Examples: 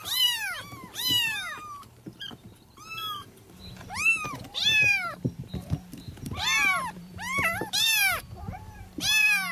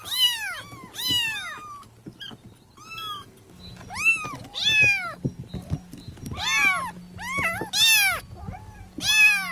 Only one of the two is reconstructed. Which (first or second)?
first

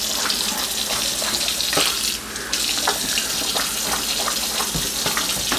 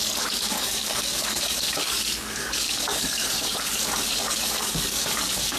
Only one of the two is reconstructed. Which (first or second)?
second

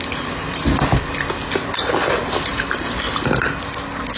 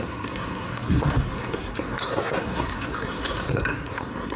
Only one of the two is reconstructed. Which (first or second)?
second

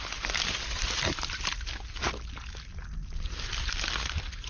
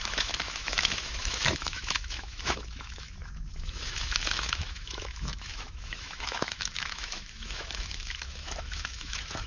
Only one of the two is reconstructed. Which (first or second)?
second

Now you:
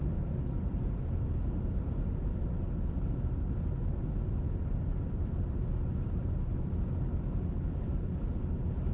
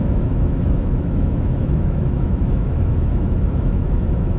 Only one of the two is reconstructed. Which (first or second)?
second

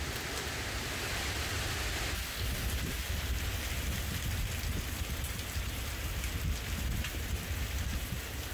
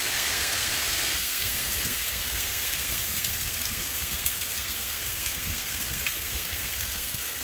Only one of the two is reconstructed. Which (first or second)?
second